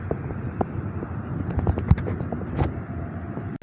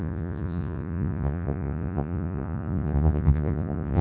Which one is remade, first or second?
second